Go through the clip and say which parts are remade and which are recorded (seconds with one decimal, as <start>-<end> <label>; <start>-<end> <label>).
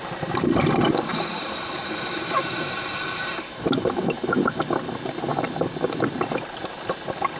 0.0-1.1 recorded; 1.1-4.6 remade; 4.6-7.4 recorded